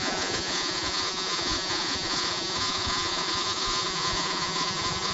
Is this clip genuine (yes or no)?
no